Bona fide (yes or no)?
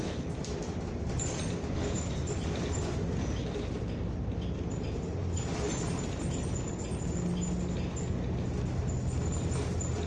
yes